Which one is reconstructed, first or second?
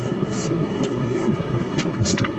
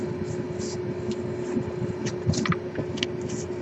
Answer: first